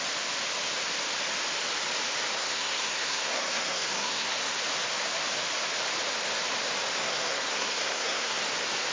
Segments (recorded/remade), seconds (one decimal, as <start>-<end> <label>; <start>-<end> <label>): 0.0-2.4 recorded; 2.4-4.6 remade; 4.6-7.0 recorded; 7.0-8.4 remade; 8.4-8.9 recorded